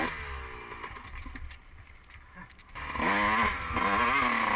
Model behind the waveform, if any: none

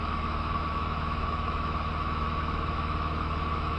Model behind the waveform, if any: autoencoder, DAC-VAE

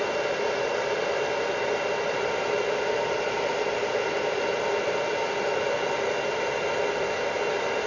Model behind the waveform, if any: none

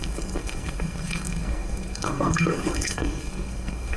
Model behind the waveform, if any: codec, SNAC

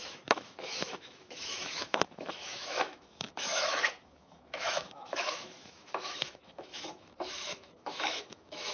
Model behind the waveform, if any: autoencoder, DAC-VAE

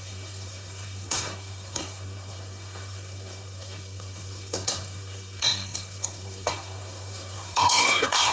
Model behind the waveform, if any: codec, SNAC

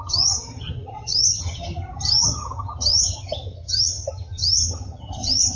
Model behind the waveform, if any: vocoder, HiFi-GAN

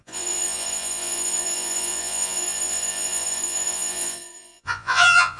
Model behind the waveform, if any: vocoder, Vocos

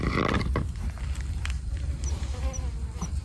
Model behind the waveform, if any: vocoder, BigVGAN v2